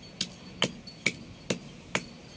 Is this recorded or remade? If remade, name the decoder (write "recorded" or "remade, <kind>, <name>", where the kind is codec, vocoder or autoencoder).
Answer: recorded